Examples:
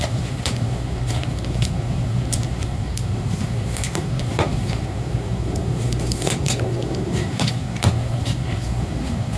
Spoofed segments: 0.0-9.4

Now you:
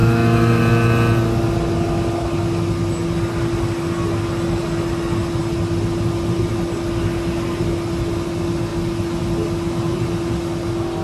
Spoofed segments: 0.0-0.6

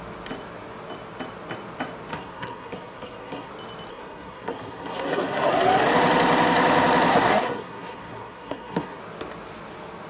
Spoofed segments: 2.1-3.5; 3.9-5.5; 7.1-9.0

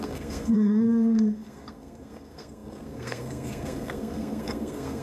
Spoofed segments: 0.0-5.0